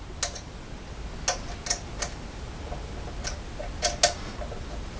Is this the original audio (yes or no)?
yes